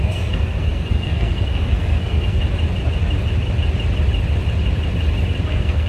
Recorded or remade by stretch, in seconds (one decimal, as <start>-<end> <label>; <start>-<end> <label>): 0.0-2.4 remade; 2.4-5.5 recorded; 5.5-5.9 remade